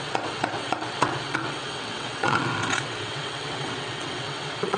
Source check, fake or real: fake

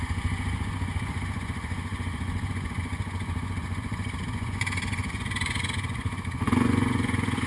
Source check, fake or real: fake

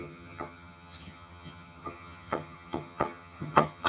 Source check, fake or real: fake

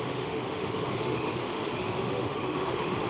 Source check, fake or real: fake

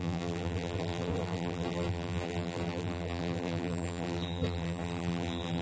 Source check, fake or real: fake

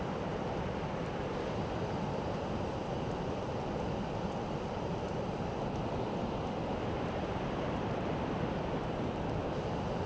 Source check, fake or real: real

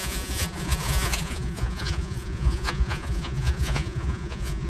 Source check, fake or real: fake